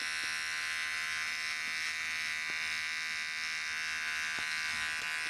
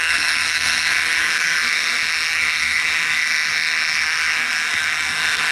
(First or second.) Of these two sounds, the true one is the first